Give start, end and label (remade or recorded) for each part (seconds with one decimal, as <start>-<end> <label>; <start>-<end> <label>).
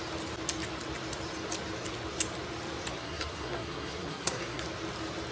0.0-2.9 recorded; 2.9-4.6 remade; 4.6-5.3 recorded